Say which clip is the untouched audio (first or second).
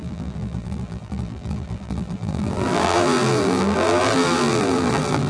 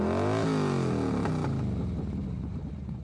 second